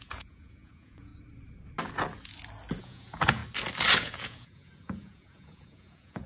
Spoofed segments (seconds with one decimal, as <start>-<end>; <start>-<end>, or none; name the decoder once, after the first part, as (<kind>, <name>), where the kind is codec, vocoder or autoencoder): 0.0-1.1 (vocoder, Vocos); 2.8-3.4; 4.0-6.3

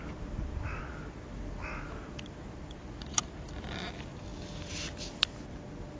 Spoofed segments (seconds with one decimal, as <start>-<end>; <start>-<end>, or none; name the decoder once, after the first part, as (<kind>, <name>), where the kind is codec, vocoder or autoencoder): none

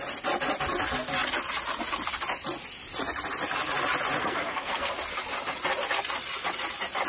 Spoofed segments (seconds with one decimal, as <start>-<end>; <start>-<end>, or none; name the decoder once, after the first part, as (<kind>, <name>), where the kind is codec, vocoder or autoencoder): 4.2-4.9 (codec, SNAC)